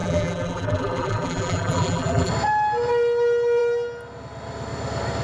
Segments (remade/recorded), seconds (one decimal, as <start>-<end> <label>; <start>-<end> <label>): 0.0-2.3 remade; 2.3-5.2 recorded